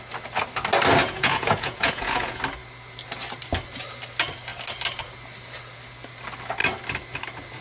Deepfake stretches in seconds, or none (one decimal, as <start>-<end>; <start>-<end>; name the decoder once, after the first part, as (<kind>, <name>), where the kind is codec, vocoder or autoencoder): 1.0-2.4 (vocoder, Vocos)